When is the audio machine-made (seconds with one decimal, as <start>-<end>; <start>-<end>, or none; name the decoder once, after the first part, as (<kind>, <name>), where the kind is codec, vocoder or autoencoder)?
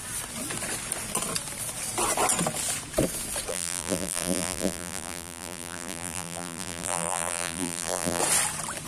3.5-8.2 (vocoder, BigVGAN v2)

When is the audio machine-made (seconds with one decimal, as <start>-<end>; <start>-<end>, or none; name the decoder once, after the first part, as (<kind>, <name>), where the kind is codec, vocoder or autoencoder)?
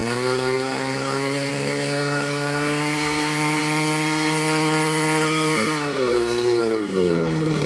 0.0-7.7 (codec, SNAC)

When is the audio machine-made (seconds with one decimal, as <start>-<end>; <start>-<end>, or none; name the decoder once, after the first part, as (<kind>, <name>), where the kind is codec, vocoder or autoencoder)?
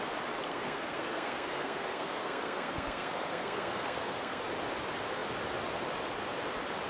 0.5-4.4 (codec, SNAC)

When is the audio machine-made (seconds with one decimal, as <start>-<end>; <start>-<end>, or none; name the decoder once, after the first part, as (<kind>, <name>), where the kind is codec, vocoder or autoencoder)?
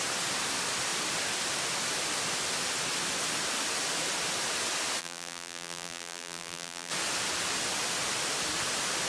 5.0-6.9 (vocoder, BigVGAN v2)